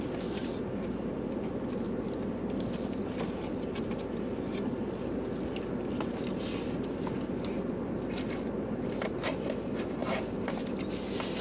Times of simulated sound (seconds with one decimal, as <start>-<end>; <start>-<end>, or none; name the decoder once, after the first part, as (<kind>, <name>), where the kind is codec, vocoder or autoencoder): none